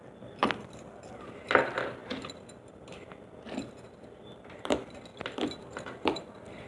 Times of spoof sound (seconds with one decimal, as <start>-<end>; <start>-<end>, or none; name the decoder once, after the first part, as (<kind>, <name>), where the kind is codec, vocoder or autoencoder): 0.0-2.0 (vocoder, BigVGAN v2); 4.4-6.7